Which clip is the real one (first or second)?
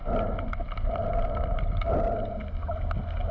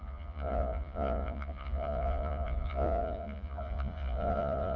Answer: first